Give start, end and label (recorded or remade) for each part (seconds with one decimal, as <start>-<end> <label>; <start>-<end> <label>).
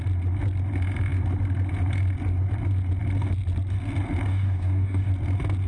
0.0-4.3 recorded; 4.3-5.1 remade; 5.1-5.7 recorded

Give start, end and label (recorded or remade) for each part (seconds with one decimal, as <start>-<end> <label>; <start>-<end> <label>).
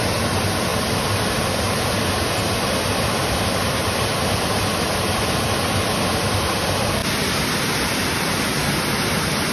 0.0-9.5 recorded